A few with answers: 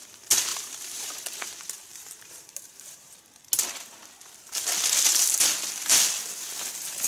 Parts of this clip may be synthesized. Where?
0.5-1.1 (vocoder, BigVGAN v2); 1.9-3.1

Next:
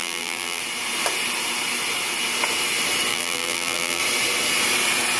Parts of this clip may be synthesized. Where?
0.0-0.6 (vocoder, BigVGAN v2); 3.1-4.0

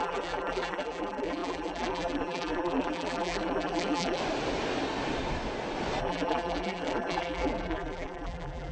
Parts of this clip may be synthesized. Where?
0.0-4.2 (vocoder, BigVGAN v2); 6.0-8.7

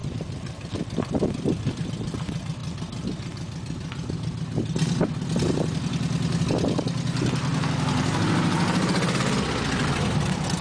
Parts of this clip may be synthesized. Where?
0.0-1.9 (vocoder, BigVGAN v2)

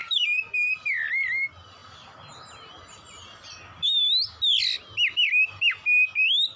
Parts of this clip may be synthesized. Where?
none

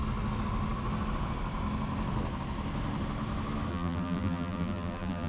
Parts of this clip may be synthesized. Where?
3.7-5.3 (vocoder, BigVGAN v2)

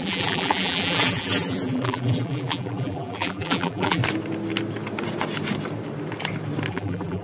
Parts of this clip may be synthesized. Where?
0.0-4.0 (vocoder, BigVGAN v2); 6.7-7.2